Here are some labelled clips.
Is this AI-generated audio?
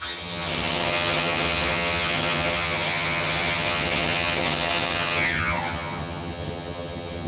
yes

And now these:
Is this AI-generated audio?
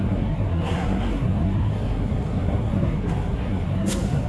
yes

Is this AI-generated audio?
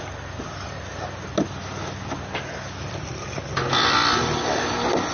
no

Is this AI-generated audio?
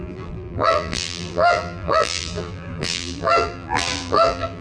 yes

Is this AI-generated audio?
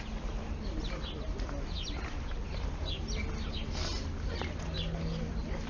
no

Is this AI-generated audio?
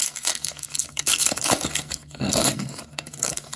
yes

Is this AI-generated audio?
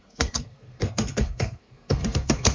yes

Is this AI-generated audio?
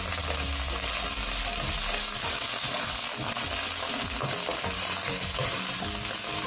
no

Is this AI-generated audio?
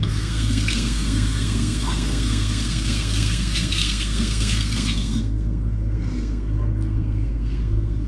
yes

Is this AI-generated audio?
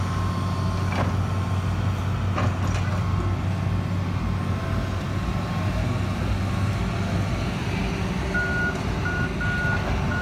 no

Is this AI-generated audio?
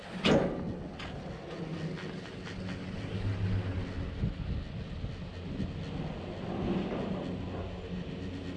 no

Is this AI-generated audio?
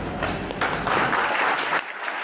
no